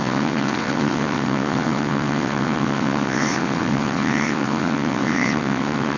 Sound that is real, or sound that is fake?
fake